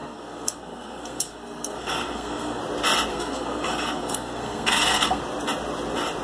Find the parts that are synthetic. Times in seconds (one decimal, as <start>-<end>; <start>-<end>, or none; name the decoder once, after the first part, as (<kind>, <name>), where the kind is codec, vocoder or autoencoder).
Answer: 0.0-2.6 (codec, SNAC); 3.1-5.2